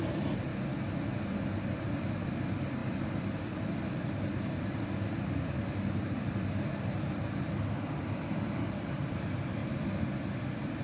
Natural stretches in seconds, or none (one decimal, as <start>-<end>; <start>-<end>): 0.5-1.6; 9.6-10.8